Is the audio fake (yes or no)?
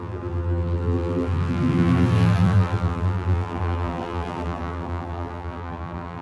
yes